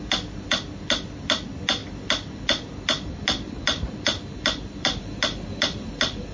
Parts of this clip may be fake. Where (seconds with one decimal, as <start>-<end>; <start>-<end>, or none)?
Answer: none